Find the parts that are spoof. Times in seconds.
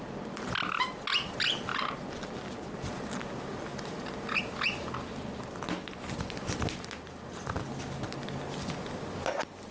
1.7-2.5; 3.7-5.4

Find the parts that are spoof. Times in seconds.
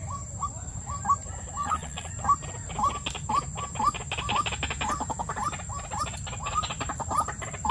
1.6-2.1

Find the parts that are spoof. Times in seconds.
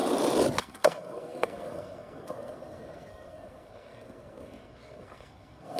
0.6-5.8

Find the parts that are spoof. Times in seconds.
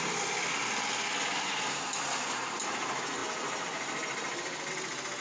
none